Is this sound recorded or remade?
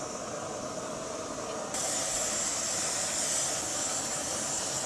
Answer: recorded